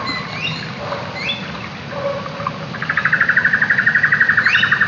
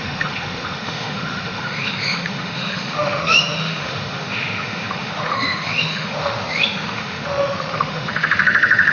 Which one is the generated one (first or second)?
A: second